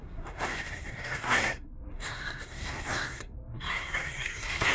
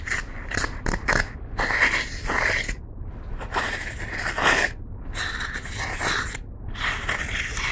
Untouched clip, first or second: second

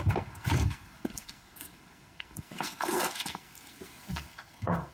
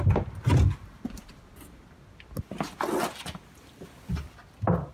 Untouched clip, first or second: second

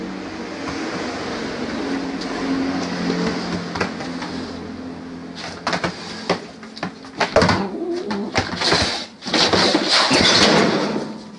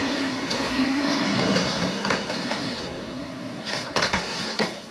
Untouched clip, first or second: first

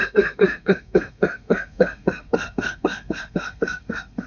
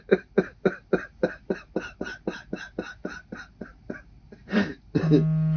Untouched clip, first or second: second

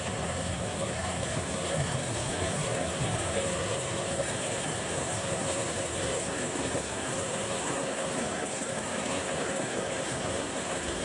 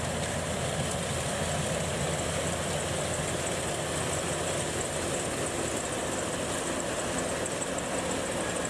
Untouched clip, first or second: second